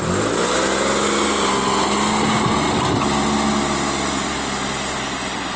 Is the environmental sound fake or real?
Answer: real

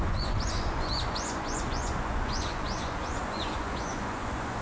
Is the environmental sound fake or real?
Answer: fake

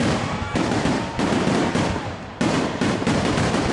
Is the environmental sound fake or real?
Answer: fake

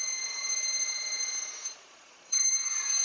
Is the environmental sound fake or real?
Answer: fake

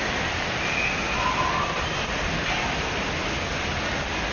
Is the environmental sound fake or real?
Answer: real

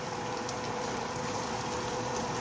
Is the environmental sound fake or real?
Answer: fake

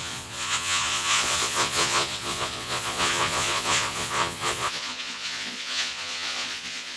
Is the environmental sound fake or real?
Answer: fake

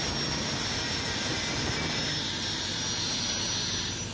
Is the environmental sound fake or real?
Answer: real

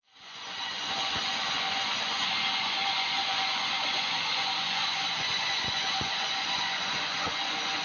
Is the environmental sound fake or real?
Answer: fake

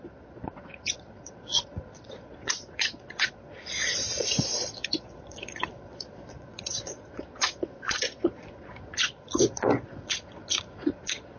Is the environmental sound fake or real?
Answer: fake